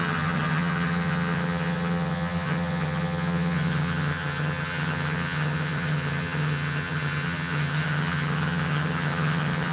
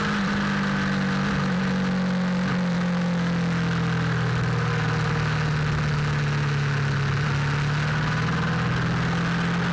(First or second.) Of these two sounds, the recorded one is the second